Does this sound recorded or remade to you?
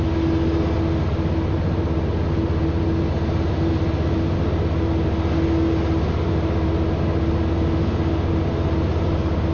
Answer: recorded